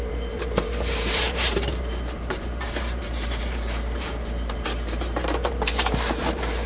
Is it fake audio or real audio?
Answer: fake